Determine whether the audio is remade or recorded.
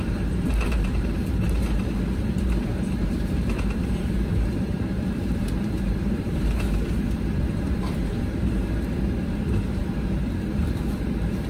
remade